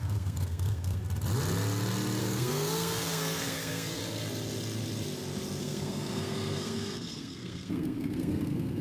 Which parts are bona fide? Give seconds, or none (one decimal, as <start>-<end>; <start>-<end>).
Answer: 1.0-2.2; 4.0-5.6